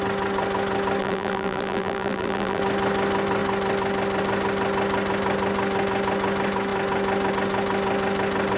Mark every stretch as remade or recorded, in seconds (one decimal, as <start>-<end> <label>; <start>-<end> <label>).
0.0-1.0 recorded; 1.0-2.6 remade; 2.6-8.6 recorded